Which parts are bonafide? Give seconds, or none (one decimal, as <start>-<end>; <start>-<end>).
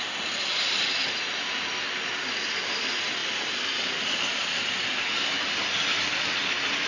0.0-6.9